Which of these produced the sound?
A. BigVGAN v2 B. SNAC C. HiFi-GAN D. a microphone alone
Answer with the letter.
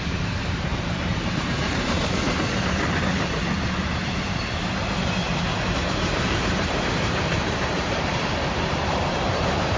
A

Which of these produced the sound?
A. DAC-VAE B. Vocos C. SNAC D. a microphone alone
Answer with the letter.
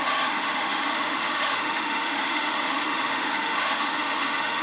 A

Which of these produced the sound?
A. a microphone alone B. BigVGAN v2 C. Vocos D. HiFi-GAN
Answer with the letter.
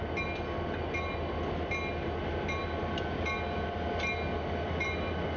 A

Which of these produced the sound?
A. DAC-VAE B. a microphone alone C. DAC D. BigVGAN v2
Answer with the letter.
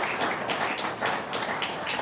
B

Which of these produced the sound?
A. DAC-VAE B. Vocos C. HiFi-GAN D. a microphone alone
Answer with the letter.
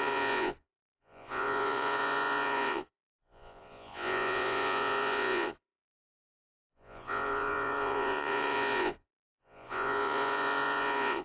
B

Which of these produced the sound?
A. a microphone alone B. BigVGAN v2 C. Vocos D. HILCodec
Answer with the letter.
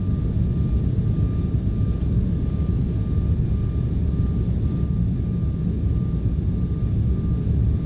A